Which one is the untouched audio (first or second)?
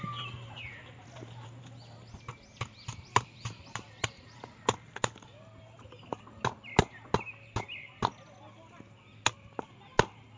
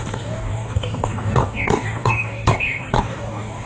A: first